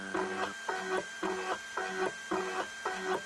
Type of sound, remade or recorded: recorded